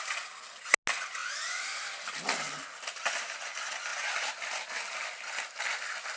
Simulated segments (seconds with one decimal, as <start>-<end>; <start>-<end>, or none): none